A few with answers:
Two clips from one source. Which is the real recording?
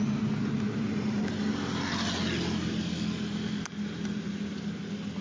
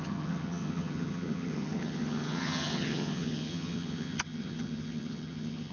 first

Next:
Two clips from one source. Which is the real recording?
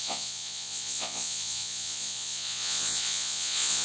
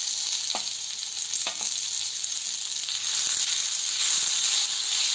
second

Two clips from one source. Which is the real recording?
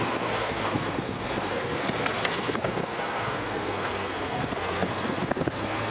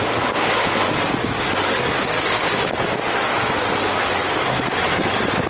second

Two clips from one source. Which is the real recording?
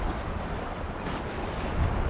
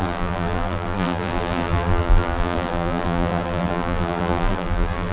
first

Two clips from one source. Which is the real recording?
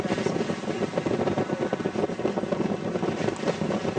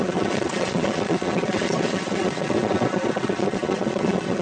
first